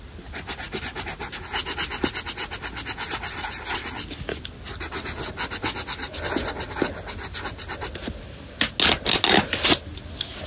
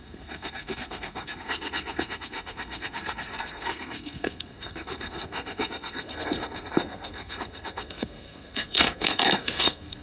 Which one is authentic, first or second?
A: first